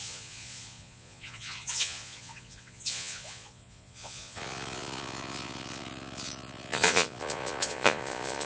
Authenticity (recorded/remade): remade